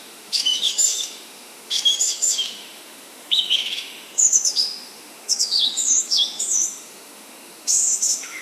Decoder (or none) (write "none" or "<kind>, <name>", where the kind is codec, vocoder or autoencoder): autoencoder, DAC-VAE